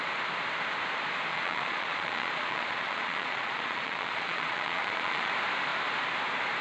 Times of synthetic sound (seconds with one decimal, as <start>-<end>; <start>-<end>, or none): 1.3-5.3

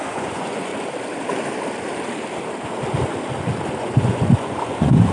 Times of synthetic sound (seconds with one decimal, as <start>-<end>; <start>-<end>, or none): 0.0-0.7; 3.8-5.1

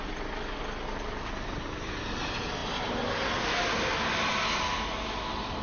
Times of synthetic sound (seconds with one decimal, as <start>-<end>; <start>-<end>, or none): none